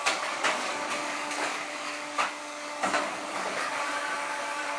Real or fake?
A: fake